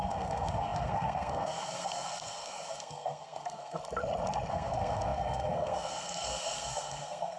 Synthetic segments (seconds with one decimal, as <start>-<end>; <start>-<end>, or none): 0.0-3.8; 4.5-7.4